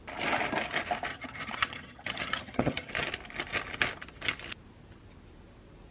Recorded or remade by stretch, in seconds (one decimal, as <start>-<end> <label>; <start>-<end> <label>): 0.0-1.1 recorded; 1.1-2.9 remade; 2.9-5.9 recorded